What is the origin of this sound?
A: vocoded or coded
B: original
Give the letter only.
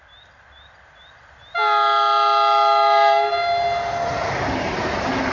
B